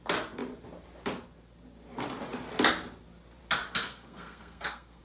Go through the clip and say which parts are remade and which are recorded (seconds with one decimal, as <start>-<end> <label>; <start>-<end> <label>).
0.0-3.9 recorded; 3.9-5.0 remade